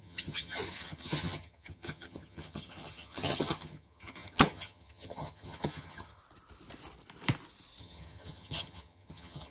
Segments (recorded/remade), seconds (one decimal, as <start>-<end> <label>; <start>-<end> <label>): 0.0-6.2 remade; 6.2-7.8 recorded; 7.8-9.5 remade